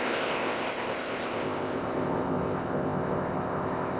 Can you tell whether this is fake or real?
fake